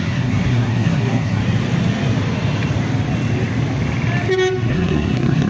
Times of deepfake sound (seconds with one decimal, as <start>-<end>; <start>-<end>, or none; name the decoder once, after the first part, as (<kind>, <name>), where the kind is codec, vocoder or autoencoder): 0.0-1.4 (codec, SNAC); 4.7-5.5

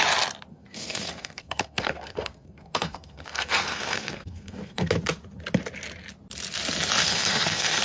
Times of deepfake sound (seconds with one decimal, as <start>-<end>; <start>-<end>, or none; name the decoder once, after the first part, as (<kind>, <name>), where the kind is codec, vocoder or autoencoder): 0.5-4.9 (codec, SNAC); 7.0-7.8

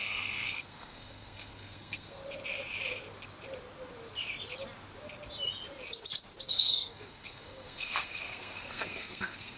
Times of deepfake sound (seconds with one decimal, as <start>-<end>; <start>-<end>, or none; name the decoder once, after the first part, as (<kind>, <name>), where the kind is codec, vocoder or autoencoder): 0.0-2.2 (codec, SNAC); 6.5-9.6